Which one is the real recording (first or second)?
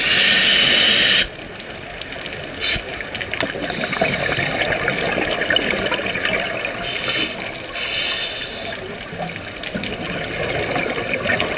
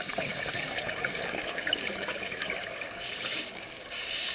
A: first